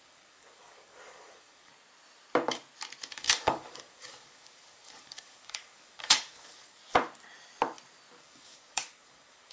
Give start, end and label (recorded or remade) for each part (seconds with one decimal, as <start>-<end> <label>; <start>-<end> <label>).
0.0-1.7 remade; 1.7-3.1 recorded; 3.1-6.8 remade; 6.8-8.2 recorded; 8.2-9.5 remade